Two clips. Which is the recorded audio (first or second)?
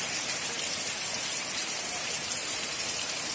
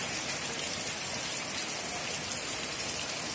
second